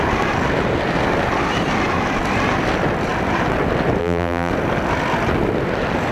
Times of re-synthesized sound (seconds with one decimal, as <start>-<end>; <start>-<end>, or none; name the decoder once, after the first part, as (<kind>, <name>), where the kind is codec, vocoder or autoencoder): 4.0-4.5 (vocoder, BigVGAN v2)